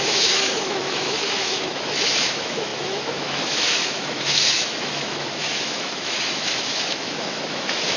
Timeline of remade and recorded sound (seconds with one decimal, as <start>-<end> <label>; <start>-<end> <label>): 0.0-8.0 remade